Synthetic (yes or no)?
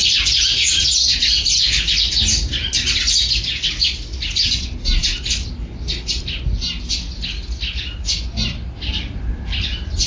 no